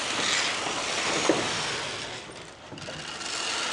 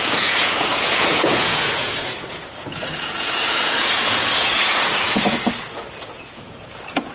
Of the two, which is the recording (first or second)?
first